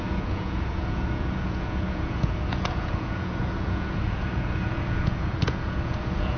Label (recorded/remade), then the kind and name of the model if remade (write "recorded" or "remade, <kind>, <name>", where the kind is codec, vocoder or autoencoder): remade, vocoder, Vocos